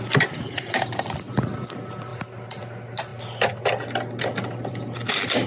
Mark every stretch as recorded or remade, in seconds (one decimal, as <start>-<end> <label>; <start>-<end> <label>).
0.0-5.5 recorded